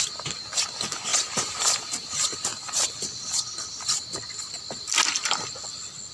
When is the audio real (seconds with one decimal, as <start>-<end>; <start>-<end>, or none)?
0.0-1.1; 2.1-6.1